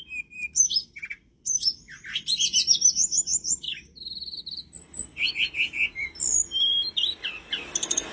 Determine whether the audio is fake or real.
real